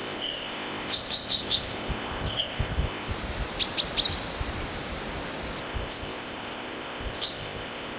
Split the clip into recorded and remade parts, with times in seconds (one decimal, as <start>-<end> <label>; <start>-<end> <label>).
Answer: 0.0-3.1 remade; 3.1-5.6 recorded; 5.6-8.0 remade